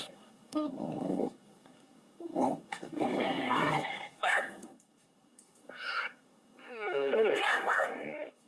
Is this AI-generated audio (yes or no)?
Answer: yes